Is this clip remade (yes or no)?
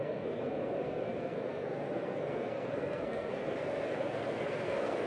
yes